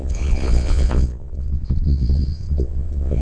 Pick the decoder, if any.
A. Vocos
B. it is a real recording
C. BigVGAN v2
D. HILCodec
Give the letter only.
A